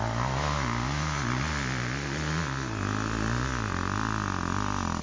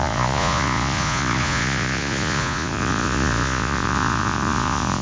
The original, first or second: first